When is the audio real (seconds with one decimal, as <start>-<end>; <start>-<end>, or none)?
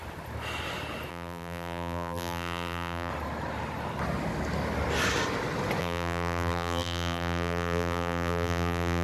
0.0-1.1; 3.1-5.8